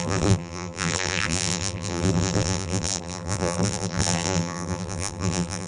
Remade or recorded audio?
remade